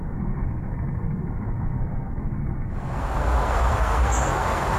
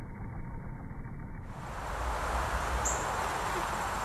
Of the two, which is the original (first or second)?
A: second